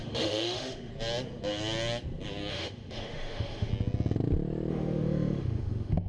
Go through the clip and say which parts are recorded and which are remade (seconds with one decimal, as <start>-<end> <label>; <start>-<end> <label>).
0.0-0.9 remade; 0.9-2.5 recorded; 2.5-3.7 remade; 3.7-4.7 recorded; 4.7-6.1 remade